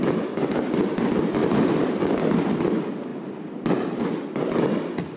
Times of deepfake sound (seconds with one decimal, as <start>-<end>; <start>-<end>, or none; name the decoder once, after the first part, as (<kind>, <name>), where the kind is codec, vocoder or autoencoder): 1.4-2.0 (vocoder, BigVGAN v2); 3.1-4.0